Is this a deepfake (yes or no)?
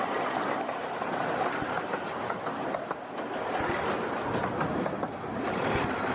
no